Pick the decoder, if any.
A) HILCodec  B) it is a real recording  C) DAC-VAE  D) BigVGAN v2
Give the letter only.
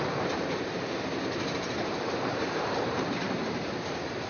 D